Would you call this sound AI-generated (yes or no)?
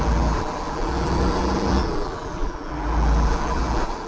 yes